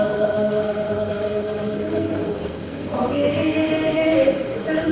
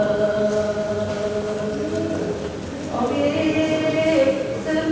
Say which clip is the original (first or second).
second